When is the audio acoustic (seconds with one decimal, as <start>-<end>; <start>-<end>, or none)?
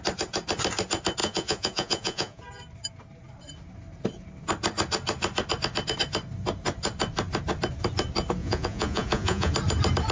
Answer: 0.0-1.2; 2.4-8.4; 9.5-10.1